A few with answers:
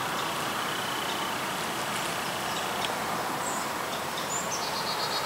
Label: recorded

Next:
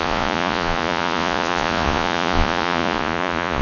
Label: remade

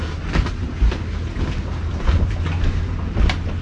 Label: recorded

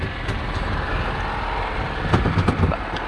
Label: recorded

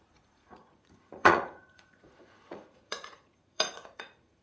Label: remade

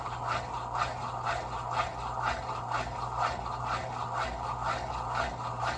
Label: recorded